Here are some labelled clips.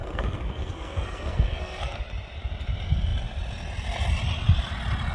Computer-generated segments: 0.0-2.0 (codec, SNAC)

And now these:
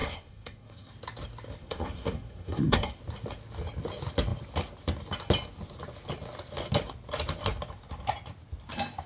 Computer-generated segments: 0.0-0.9 (codec, SNAC); 1.6-3.0

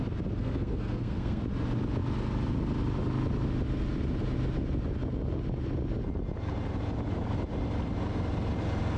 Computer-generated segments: 0.4-1.4 (codec, SNAC)

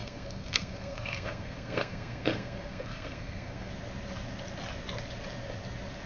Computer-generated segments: 0.0-3.7 (codec, SNAC)

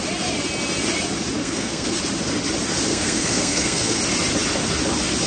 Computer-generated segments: 1.4-2.0 (codec, SNAC); 2.9-4.0

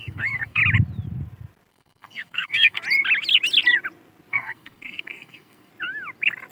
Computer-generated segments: 0.0-0.6 (codec, SNAC); 1.7-2.8; 4.3-5.7

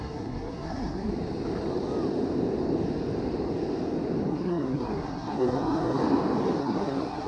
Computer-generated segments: 0.0-1.1 (codec, SNAC); 4.3-6.0; 6.6-7.3